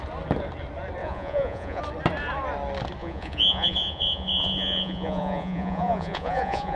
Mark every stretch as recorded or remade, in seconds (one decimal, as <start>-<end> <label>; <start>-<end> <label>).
0.0-1.0 recorded; 1.0-1.8 remade; 1.8-3.0 recorded; 3.0-6.8 remade